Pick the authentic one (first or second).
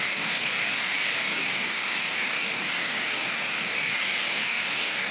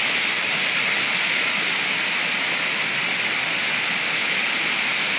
second